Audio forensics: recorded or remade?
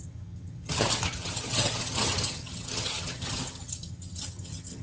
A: remade